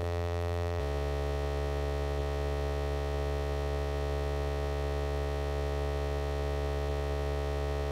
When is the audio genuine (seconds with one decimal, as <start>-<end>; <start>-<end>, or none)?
0.8-7.9